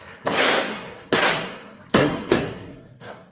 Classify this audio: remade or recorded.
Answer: remade